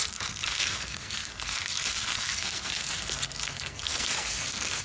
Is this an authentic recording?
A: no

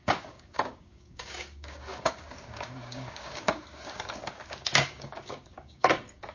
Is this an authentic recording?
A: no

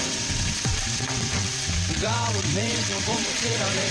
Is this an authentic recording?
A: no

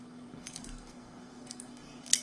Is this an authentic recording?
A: no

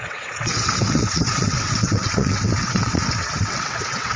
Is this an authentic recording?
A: no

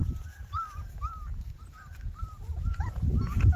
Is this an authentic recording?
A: no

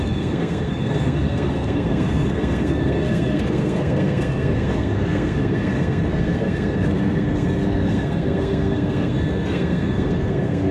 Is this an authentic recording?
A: no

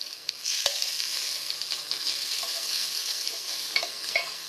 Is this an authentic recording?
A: no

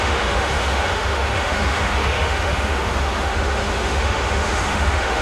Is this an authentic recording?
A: no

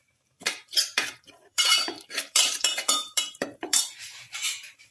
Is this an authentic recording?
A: no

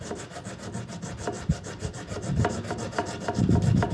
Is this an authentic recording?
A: yes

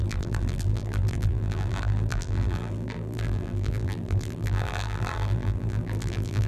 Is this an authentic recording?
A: no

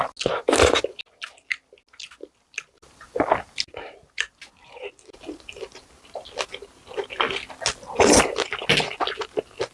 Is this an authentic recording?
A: yes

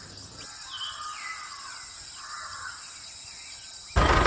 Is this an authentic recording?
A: yes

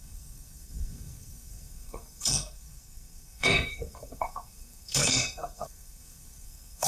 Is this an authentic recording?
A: no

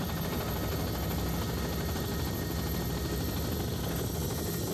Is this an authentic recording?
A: yes